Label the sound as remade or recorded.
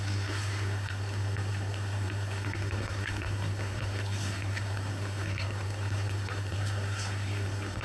remade